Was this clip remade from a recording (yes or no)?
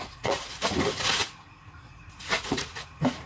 yes